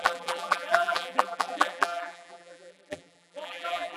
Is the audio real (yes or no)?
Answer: no